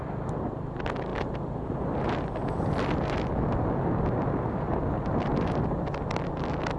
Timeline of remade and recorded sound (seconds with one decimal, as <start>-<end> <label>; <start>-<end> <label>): 0.0-6.8 recorded